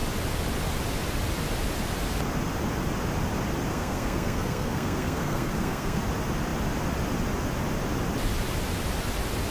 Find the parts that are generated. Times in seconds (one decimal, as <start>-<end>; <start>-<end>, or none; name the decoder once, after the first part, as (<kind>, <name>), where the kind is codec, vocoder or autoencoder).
3.7-6.0 (codec, SNAC)